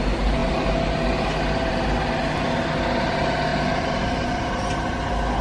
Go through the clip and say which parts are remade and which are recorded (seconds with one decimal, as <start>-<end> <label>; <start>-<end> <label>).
0.0-0.4 recorded; 0.4-2.7 remade; 2.7-5.4 recorded